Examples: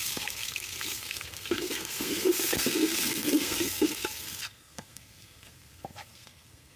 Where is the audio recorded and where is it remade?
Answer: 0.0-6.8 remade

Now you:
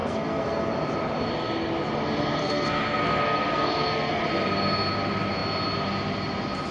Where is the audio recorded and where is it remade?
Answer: 0.0-0.7 remade; 0.7-2.4 recorded; 2.4-4.2 remade; 4.2-6.7 recorded

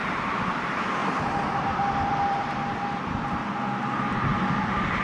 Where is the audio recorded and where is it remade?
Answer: 0.0-1.0 recorded; 1.0-2.5 remade; 2.5-4.3 recorded; 4.3-5.0 remade

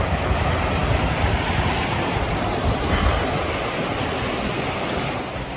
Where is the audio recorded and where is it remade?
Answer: 0.0-5.6 recorded

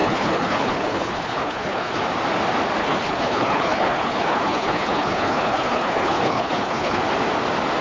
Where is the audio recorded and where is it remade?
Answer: 0.0-2.0 remade; 2.0-2.8 recorded; 2.8-7.0 remade; 7.0-7.8 recorded

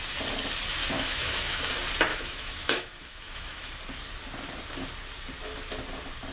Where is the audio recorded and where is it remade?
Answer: 0.0-0.8 recorded; 0.8-1.7 remade; 1.7-2.1 recorded; 2.1-3.7 remade; 3.7-6.3 recorded

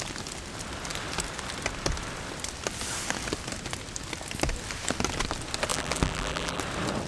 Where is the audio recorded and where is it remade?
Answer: 0.0-5.7 recorded; 5.7-6.6 remade; 6.6-7.1 recorded

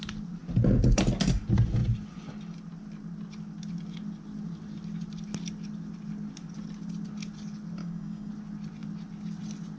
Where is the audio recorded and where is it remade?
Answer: 0.0-7.8 recorded; 7.8-8.3 remade; 8.3-9.8 recorded